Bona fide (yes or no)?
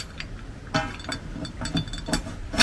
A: yes